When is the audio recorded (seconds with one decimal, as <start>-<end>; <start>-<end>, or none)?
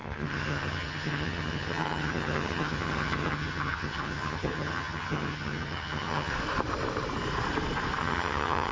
6.3-8.0